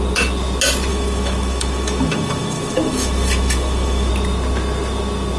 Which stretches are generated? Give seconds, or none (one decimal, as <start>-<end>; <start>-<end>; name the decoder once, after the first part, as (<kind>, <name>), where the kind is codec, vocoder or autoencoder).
0.9-4.1 (autoencoder, DAC-VAE)